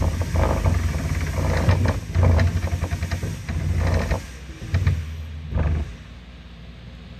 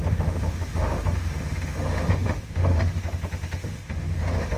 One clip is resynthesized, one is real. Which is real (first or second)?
first